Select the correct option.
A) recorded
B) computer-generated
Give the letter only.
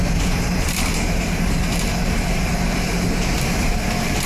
B